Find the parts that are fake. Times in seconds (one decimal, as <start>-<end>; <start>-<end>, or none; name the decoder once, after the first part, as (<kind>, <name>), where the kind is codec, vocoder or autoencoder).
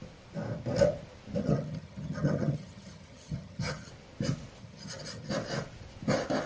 1.4-3.9 (vocoder, HiFi-GAN); 4.6-5.3